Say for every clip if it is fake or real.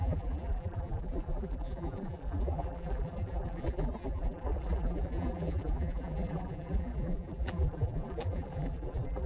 fake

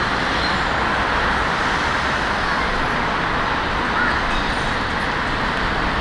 real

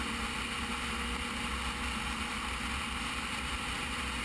real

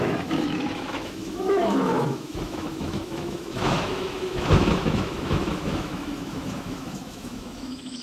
fake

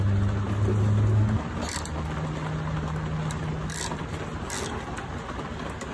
real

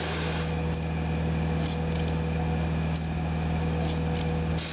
real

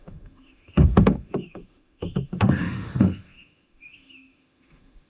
fake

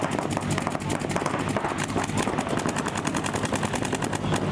real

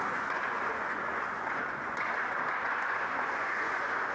fake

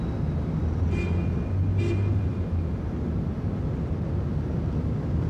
real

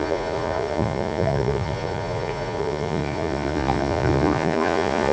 fake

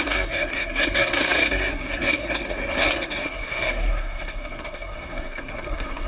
fake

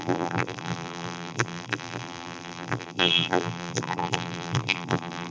fake